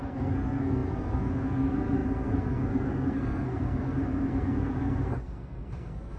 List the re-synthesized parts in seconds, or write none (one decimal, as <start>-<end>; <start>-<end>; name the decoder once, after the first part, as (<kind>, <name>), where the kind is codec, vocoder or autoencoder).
0.0-6.2 (codec, SNAC)